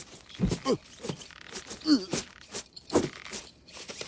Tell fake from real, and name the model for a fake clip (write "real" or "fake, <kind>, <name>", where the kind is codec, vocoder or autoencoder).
real